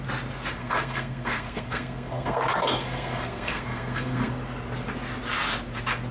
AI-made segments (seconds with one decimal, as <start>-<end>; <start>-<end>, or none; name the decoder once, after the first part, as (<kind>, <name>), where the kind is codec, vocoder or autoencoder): 0.6-4.3 (codec, SNAC)